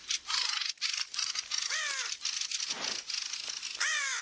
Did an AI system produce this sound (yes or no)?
no